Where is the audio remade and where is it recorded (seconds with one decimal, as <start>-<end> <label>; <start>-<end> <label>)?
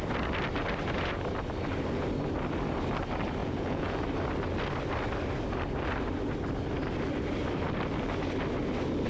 0.0-3.4 recorded; 3.4-4.0 remade; 4.0-9.1 recorded